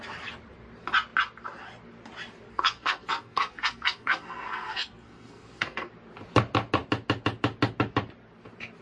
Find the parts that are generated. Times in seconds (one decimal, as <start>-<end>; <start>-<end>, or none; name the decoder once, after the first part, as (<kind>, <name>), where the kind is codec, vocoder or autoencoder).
2.5-5.9 (codec, SNAC)